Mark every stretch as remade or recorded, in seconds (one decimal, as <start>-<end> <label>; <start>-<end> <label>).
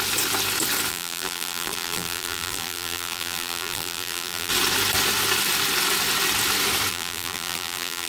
0.0-0.9 recorded; 0.9-4.5 remade; 4.5-6.9 recorded; 6.9-8.1 remade